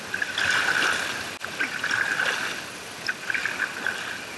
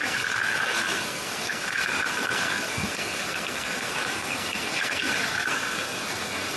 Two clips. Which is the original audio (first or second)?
first